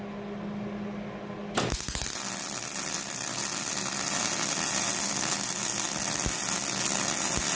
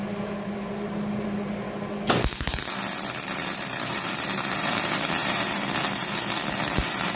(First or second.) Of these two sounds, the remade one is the second